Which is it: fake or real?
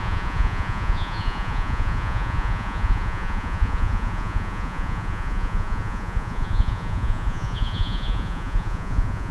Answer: fake